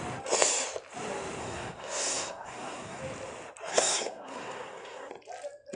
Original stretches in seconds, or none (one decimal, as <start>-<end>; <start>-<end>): 0.0-1.4; 3.0-3.7; 5.1-5.8